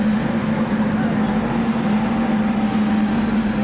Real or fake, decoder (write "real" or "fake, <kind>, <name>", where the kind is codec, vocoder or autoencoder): real